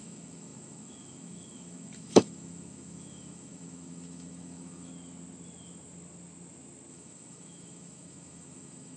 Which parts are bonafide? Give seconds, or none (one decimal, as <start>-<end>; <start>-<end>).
4.9-6.9